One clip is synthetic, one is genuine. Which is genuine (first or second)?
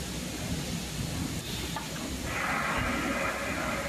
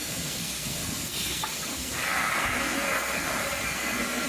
first